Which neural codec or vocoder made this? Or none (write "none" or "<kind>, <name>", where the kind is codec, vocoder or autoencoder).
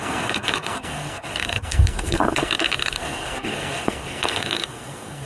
codec, SNAC